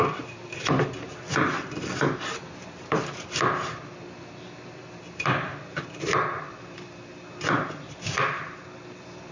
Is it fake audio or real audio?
fake